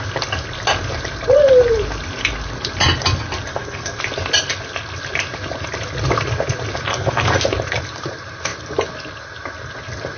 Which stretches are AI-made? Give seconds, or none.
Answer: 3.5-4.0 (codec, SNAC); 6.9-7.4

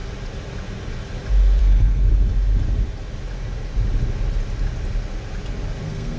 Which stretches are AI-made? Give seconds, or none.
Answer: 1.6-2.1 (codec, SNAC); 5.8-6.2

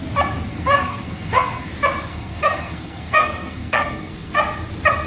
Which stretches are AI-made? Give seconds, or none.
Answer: 0.5-1.7 (codec, SNAC); 2.1-4.4

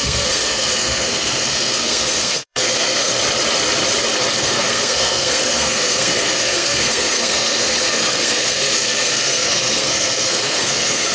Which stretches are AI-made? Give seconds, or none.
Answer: 0.0-3.1 (codec, SNAC); 4.4-11.1

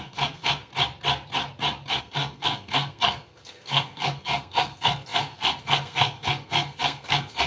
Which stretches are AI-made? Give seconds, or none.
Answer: 0.0-0.7 (codec, SNAC); 2.0-7.5

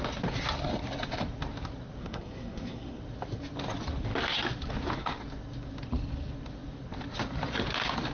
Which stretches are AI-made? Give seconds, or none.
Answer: 2.0-3.0 (codec, SNAC)

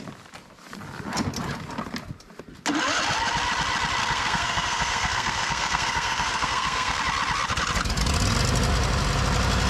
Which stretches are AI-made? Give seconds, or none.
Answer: 4.0-7.0 (codec, SNAC)